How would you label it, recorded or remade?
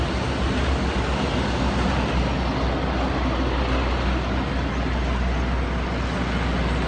recorded